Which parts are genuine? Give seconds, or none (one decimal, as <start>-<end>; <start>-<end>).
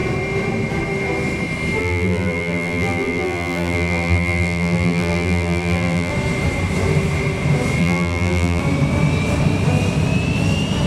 0.0-1.8; 6.1-7.8; 8.6-10.9